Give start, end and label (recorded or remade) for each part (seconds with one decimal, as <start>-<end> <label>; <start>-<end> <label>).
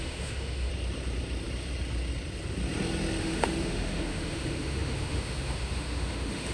0.0-0.7 remade; 0.7-3.2 recorded; 3.2-6.5 remade